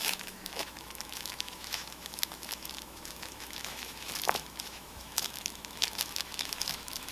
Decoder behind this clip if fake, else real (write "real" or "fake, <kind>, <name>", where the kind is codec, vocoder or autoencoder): fake, autoencoder, DAC-VAE